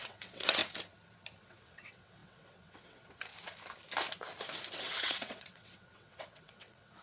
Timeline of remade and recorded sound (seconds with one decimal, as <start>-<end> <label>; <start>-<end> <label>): 0.0-0.6 remade; 0.6-1.4 recorded; 1.4-3.3 remade; 3.3-4.7 recorded; 4.7-7.0 remade